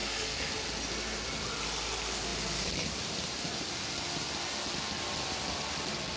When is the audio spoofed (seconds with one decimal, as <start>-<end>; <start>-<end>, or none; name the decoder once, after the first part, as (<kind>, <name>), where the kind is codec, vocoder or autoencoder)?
0.0-0.5 (codec, SNAC)